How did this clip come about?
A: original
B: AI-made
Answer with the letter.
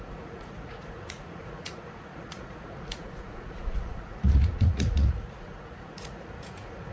B